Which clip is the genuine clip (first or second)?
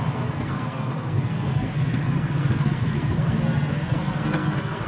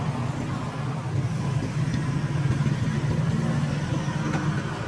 second